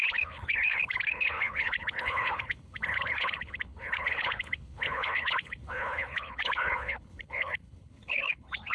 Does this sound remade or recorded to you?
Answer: remade